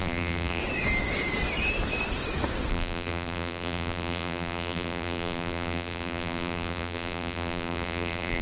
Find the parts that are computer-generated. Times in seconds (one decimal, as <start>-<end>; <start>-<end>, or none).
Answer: 0.0-0.6; 2.7-8.4